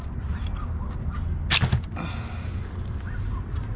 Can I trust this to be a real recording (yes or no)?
yes